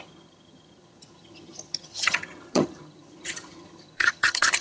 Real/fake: fake